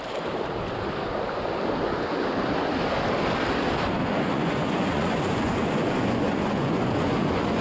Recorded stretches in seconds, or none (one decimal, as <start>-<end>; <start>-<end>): 0.0-4.0